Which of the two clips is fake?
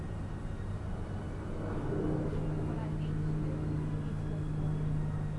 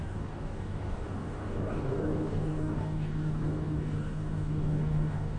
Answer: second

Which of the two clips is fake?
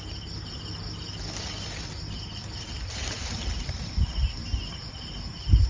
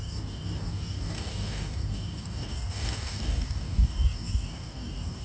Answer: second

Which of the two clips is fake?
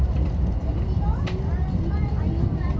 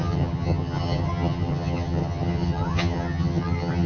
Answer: second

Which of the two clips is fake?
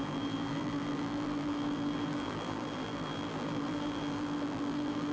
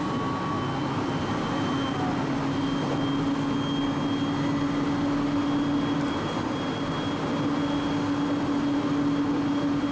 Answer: first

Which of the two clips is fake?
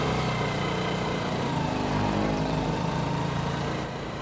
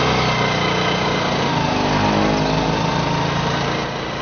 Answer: first